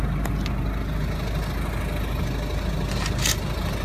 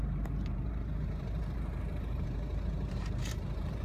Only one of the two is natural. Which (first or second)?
first